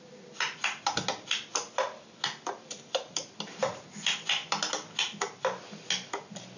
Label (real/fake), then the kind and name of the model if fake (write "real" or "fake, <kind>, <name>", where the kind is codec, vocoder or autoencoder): real